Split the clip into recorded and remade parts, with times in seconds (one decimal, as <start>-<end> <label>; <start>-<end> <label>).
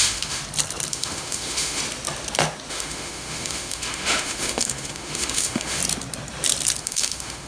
0.0-0.4 remade; 0.4-0.9 recorded; 0.9-1.8 remade; 1.8-2.7 recorded; 2.7-5.8 remade; 5.8-6.8 recorded; 6.8-7.5 remade